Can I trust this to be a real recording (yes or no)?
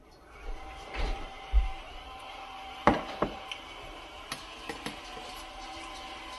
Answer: no